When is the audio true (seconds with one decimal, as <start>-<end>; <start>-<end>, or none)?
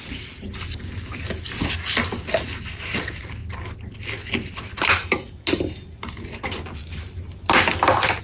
0.0-8.2